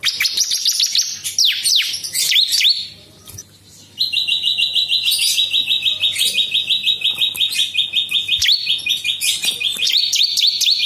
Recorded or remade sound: recorded